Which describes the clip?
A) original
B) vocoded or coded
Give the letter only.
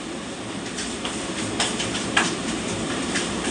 B